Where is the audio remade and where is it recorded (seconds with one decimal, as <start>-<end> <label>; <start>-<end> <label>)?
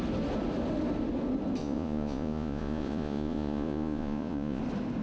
0.0-1.6 recorded; 1.6-4.6 remade; 4.6-5.0 recorded